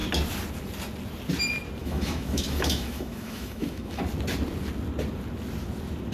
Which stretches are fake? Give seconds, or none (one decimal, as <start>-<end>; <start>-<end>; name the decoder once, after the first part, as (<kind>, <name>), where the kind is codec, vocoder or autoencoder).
1.8-4.0 (autoencoder, DAC-VAE)